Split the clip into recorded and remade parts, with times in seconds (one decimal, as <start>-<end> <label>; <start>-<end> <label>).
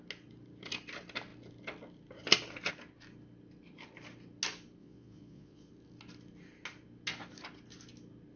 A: 0.0-4.8 recorded; 4.8-5.7 remade; 5.7-8.4 recorded